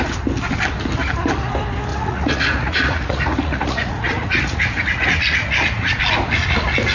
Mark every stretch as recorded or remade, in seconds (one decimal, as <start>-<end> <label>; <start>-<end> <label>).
0.0-1.9 recorded; 1.9-6.0 remade; 6.0-6.9 recorded